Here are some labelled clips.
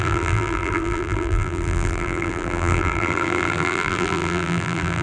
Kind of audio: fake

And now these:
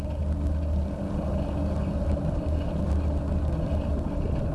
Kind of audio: real